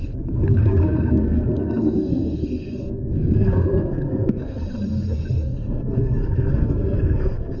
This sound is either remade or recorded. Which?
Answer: remade